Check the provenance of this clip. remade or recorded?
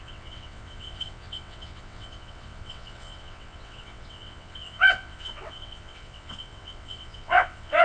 remade